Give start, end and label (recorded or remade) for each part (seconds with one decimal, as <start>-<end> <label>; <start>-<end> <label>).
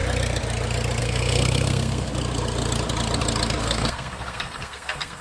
0.0-1.0 recorded; 1.0-2.1 remade; 2.1-3.6 recorded; 3.6-5.2 remade